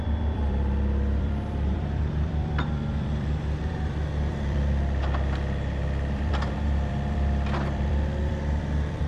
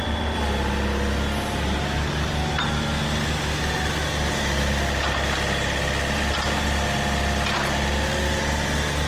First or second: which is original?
second